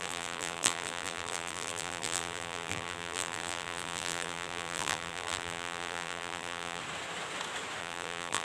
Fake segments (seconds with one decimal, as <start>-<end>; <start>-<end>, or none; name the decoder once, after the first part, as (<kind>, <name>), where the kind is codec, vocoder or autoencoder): 0.0-6.8 (vocoder, BigVGAN v2); 7.8-8.4